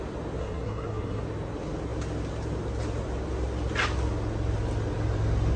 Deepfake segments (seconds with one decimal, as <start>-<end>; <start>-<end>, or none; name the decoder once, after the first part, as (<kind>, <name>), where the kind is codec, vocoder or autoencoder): 0.4-1.2 (codec, SNAC)